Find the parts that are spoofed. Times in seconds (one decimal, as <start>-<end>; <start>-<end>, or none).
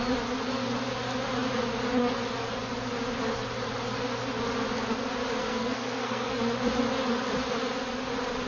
5.4-6.4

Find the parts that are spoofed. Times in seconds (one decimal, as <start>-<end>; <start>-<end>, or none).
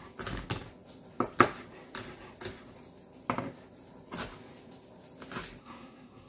5.6-6.3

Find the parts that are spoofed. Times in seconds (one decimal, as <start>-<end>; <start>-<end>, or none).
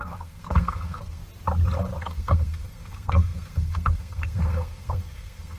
0.0-1.2; 2.0-5.6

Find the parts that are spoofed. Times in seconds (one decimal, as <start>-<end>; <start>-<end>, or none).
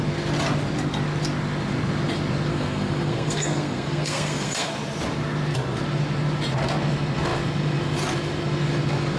2.5-4.7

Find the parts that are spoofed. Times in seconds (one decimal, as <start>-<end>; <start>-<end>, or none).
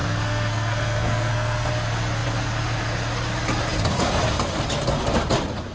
0.0-1.7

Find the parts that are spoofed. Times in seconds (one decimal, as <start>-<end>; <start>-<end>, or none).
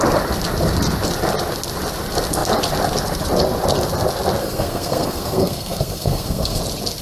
4.4-6.6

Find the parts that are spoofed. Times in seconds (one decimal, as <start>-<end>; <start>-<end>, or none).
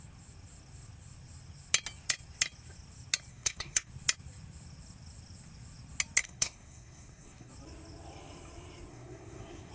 3.3-3.9; 6.2-7.5; 8.9-9.7